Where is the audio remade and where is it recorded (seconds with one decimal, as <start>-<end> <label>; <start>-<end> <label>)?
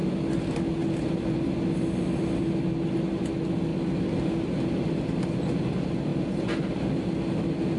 0.0-7.8 recorded